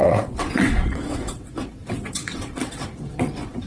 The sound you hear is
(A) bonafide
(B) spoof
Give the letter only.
B